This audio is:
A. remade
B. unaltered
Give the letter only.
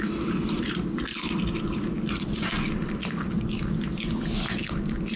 B